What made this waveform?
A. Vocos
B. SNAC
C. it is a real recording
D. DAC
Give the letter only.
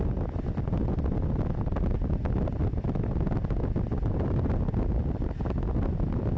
C